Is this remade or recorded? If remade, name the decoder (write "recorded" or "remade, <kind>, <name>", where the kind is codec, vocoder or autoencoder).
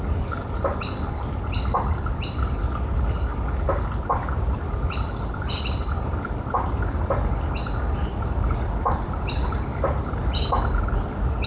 recorded